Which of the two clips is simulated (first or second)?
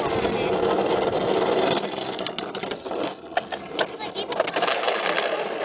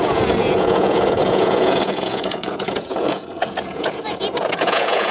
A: second